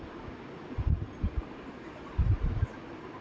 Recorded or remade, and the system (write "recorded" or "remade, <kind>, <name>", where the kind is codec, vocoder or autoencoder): recorded